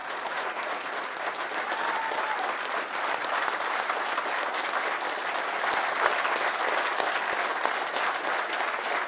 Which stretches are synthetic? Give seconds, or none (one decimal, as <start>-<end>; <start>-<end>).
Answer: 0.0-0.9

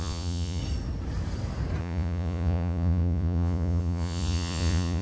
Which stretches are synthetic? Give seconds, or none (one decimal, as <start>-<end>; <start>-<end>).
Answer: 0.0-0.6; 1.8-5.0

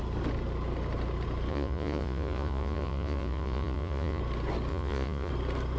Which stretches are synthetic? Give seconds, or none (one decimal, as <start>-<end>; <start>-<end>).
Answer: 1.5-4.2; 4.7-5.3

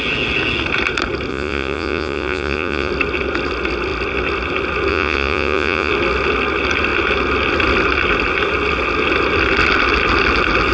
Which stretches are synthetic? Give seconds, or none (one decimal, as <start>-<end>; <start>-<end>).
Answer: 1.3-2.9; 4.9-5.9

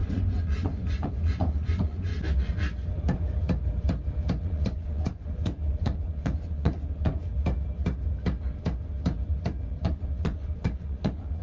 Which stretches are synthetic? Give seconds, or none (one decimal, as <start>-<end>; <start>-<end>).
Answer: 0.0-2.1; 4.4-7.2; 9.8-11.4

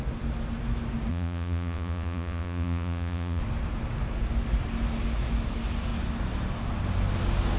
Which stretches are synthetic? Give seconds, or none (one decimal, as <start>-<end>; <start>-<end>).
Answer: 1.1-3.4